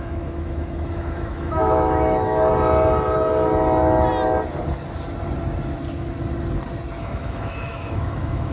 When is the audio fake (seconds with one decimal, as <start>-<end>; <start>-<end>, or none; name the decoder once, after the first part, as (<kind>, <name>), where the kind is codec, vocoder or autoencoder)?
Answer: 0.0-2.5 (autoencoder, DAC-VAE); 7.0-8.5